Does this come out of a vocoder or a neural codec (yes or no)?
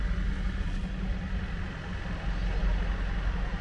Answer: no